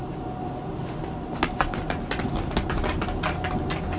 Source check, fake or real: real